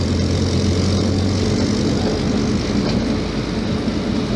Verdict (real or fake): real